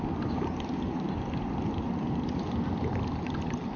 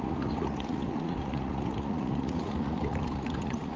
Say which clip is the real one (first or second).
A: first